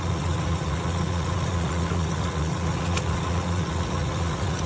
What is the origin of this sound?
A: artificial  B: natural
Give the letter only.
A